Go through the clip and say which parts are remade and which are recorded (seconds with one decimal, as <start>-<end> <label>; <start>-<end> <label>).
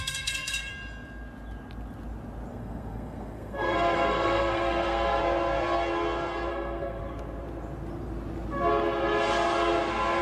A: 0.0-0.7 remade; 0.7-2.5 recorded; 2.5-5.2 remade; 5.2-6.5 recorded; 6.5-7.0 remade; 7.0-10.2 recorded